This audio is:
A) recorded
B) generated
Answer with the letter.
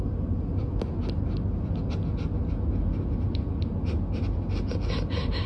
A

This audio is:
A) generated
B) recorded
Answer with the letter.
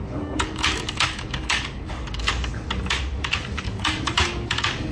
A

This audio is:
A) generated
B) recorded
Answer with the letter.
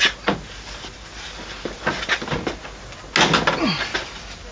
B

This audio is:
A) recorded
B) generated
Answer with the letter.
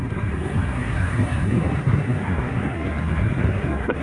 B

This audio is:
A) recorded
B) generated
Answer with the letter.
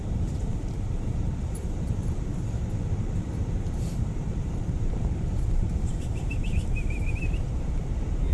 B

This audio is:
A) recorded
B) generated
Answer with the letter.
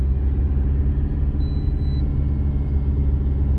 A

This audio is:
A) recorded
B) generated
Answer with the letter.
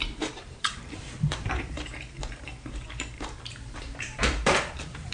B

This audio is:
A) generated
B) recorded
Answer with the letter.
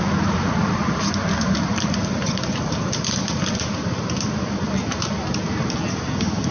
B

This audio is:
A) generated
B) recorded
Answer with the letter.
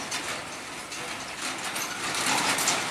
B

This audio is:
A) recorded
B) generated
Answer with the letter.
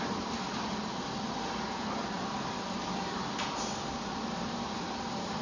A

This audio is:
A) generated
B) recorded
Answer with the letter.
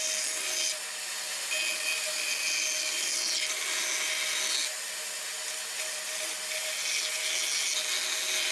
B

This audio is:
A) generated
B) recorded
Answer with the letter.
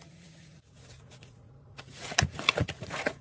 A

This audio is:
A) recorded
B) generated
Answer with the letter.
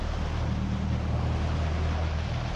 A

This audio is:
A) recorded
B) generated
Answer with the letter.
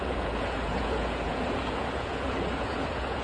B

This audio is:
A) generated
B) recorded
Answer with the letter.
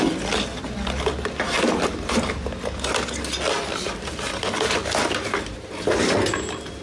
B